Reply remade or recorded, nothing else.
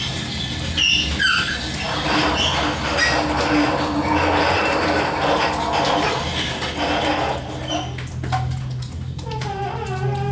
recorded